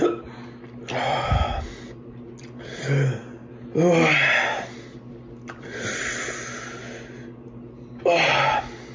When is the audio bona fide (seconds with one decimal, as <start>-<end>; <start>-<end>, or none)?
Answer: 0.0-8.9